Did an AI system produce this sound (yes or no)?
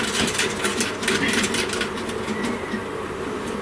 no